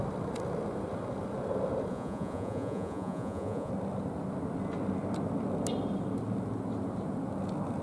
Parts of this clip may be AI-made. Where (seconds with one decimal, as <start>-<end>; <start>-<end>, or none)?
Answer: 1.9-3.7